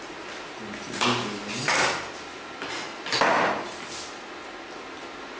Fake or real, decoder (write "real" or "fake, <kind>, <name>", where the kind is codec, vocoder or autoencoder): real